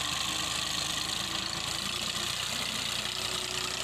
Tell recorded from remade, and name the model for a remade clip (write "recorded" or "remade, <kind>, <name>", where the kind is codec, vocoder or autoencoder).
recorded